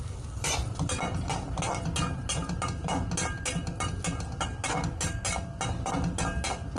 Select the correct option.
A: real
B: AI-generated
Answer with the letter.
A